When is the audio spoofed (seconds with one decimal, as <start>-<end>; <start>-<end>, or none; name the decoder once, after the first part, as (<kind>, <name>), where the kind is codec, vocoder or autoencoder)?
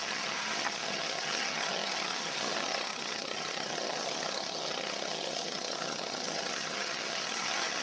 0.0-7.8 (vocoder, HiFi-GAN)